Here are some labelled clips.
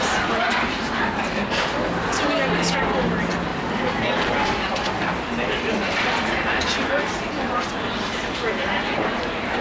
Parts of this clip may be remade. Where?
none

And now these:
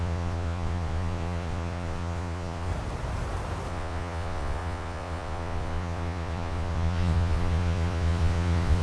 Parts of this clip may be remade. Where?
0.0-2.7 (vocoder, Vocos); 3.7-8.8

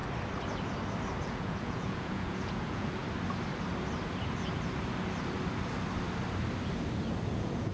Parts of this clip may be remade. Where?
1.2-3.0 (vocoder, Vocos); 7.3-7.7

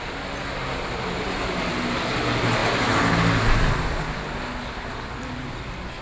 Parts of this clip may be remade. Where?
none

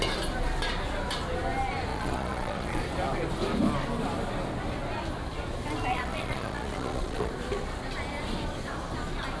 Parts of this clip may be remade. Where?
1.9-2.8 (vocoder, Vocos); 5.9-7.3